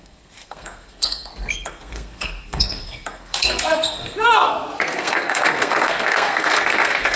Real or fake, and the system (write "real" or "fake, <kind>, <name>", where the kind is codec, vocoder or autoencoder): fake, codec, SNAC